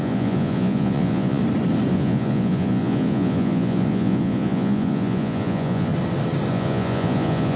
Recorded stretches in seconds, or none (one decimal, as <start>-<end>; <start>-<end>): 1.4-1.9; 5.9-6.5